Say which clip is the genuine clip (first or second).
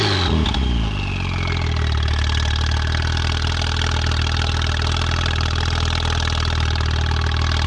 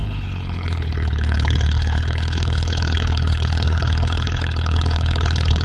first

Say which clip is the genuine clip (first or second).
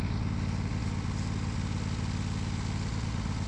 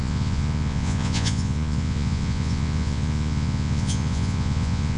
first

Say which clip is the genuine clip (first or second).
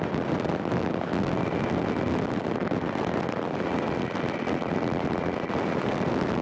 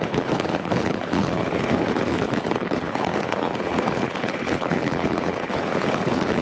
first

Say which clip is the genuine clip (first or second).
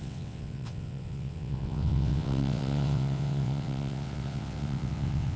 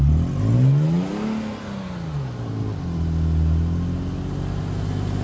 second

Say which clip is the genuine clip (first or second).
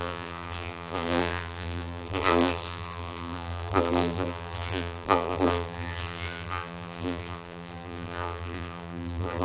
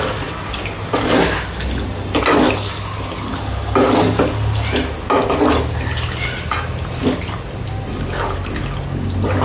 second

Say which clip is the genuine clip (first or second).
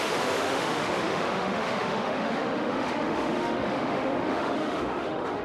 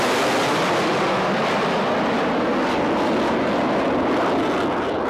second